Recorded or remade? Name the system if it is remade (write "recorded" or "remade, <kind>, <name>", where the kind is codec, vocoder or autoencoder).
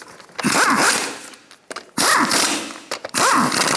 recorded